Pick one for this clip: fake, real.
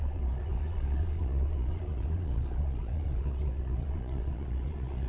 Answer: fake